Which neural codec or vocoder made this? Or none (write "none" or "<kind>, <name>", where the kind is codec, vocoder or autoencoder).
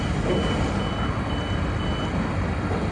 none